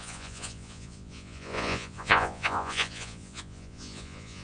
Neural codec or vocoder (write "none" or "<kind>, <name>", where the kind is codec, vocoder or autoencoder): vocoder, Vocos